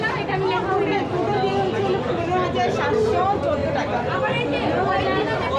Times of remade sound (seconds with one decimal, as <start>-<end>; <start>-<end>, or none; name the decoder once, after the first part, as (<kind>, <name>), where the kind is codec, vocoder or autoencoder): none